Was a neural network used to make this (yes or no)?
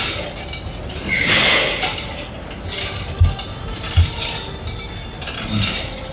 no